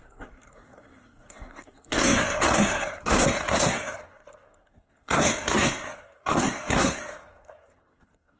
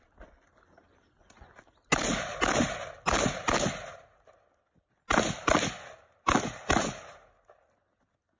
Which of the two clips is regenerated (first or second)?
first